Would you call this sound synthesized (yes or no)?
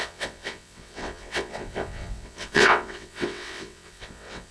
yes